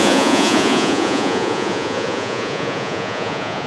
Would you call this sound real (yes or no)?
no